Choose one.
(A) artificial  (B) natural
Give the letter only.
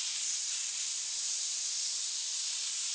B